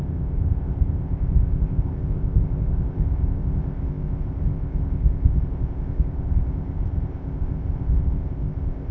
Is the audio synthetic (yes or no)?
yes